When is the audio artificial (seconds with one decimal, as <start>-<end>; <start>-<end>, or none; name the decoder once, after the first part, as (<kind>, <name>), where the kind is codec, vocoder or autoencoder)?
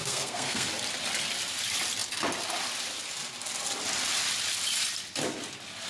0.0-0.7 (codec, SNAC)